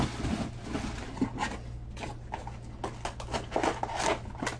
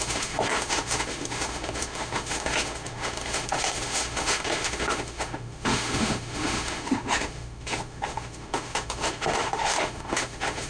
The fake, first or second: second